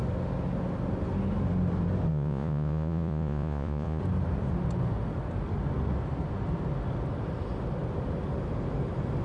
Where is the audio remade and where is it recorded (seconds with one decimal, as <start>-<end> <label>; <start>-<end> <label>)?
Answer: 0.0-2.1 recorded; 2.1-4.0 remade; 4.0-9.2 recorded